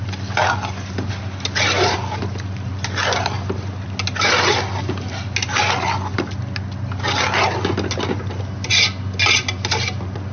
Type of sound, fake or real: real